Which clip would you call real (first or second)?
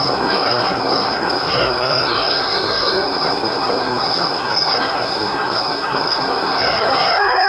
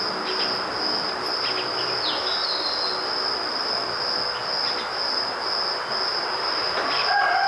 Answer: second